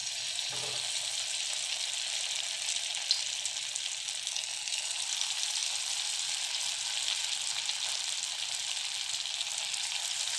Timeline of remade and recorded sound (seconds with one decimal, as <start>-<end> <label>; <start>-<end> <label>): 0.0-10.4 recorded

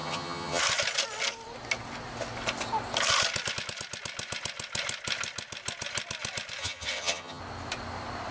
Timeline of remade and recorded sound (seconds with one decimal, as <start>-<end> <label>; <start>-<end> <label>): 0.0-0.6 remade; 0.6-6.6 recorded; 6.6-7.4 remade; 7.4-8.3 recorded

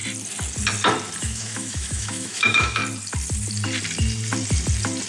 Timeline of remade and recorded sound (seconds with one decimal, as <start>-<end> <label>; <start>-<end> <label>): 0.0-1.2 recorded; 1.2-2.8 remade; 2.8-5.1 recorded

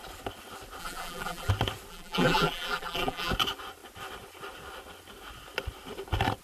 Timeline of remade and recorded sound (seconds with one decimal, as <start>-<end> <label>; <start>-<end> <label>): 0.0-0.8 recorded; 0.8-1.5 remade; 1.5-1.9 recorded; 1.9-3.3 remade; 3.3-6.4 recorded

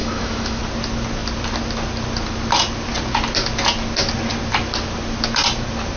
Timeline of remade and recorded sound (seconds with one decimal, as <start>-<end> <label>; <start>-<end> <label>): 0.0-0.6 remade; 0.6-6.0 recorded